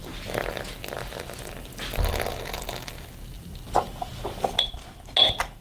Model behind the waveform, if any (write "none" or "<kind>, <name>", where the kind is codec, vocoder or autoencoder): none